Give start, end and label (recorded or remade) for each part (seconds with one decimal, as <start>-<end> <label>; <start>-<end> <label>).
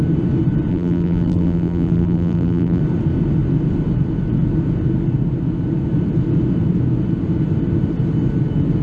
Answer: 0.0-0.7 recorded; 0.7-2.8 remade; 2.8-8.8 recorded